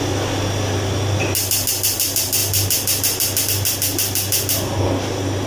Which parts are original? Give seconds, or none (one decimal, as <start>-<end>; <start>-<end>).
0.0-5.5